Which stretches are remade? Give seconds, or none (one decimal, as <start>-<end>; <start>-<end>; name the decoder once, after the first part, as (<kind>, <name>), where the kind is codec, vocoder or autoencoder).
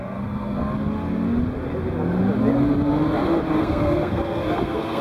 0.0-0.6 (codec, SNAC); 3.6-5.0